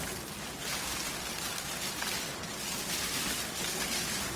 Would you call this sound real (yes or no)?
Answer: yes